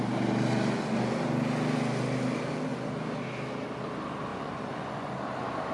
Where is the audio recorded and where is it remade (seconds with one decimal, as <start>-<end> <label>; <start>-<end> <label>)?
0.0-4.3 recorded; 4.3-5.1 remade; 5.1-5.7 recorded